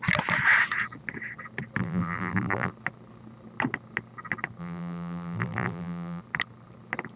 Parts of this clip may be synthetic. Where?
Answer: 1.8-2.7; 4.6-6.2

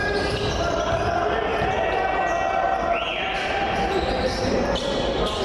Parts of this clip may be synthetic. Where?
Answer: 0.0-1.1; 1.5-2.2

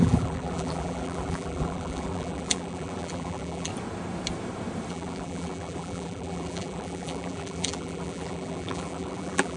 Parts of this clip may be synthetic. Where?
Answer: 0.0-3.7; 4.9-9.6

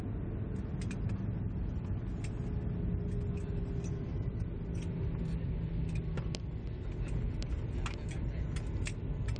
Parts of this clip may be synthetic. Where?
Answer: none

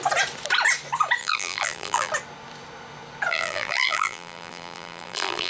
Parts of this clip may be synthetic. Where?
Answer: 1.2-2.1; 3.3-5.5

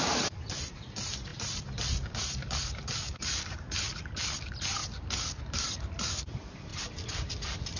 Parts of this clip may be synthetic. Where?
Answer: 0.0-7.8

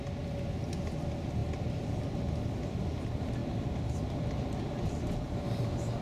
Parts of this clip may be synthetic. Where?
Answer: none